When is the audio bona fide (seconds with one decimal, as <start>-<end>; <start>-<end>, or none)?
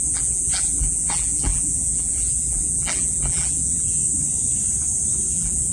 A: 4.0-5.3